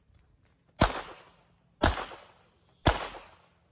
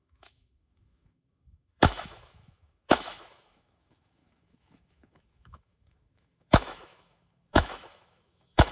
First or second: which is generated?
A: second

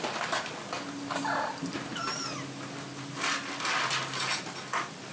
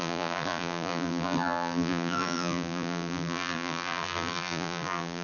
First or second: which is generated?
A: second